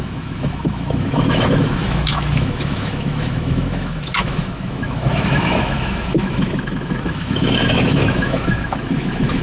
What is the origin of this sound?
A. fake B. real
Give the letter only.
A